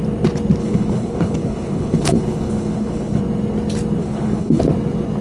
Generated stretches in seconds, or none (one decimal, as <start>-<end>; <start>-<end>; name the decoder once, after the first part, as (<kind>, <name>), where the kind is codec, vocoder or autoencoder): 0.6-3.2 (codec, HILCodec); 4.0-4.6